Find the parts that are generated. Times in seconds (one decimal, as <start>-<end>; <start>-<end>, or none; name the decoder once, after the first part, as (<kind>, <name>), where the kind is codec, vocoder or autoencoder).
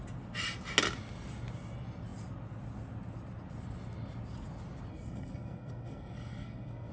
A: 4.9-6.9 (codec, SNAC)